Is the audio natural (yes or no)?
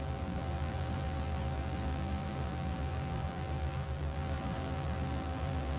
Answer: no